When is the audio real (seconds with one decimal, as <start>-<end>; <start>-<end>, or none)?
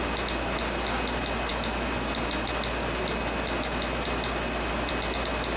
0.0-5.6